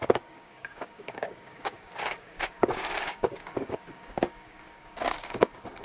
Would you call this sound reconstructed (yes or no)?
yes